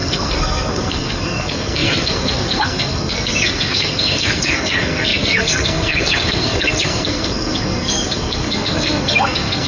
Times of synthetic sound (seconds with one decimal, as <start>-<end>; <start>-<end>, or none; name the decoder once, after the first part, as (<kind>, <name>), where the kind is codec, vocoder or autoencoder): 0.0-9.7 (codec, SNAC)